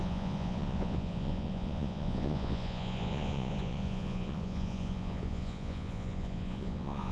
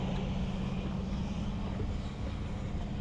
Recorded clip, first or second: second